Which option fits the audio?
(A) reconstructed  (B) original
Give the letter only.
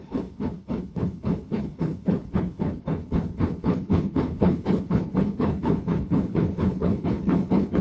A